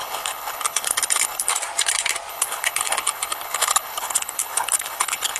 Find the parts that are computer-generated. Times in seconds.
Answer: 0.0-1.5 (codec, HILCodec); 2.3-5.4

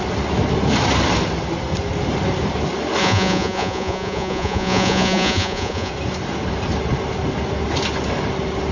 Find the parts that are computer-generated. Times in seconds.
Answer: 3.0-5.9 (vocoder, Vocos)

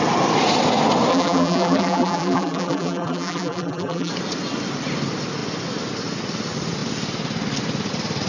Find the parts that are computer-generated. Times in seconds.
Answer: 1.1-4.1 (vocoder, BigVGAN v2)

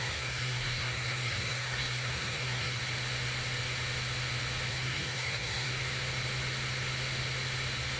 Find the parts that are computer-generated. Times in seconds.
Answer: 0.0-2.8 (codec, SNAC); 4.7-5.7

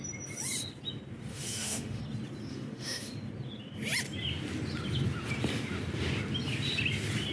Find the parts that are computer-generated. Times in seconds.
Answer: 1.3-2.0 (autoencoder, DAC-VAE); 2.5-3.1